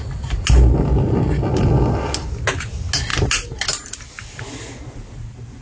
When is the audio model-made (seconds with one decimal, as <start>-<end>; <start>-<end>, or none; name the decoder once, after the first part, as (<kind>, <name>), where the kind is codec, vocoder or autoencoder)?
none